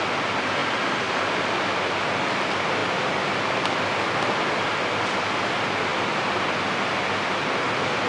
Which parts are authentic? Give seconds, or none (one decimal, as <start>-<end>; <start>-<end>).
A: 0.0-0.6; 1.3-5.9; 6.5-8.1